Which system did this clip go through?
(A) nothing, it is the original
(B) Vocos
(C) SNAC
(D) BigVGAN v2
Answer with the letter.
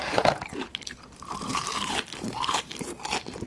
D